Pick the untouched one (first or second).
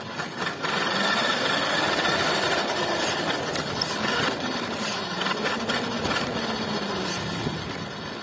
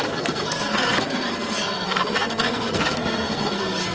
first